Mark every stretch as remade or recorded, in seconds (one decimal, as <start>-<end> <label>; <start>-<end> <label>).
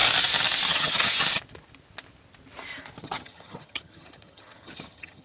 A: 0.0-0.7 recorded; 0.7-1.2 remade; 1.2-3.0 recorded; 3.0-5.2 remade